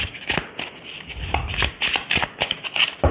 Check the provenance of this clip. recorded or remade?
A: recorded